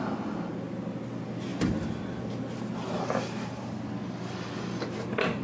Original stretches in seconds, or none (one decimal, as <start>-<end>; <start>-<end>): 0.0-5.4

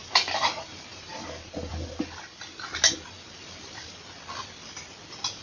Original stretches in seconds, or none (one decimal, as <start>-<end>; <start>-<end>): 0.0-5.4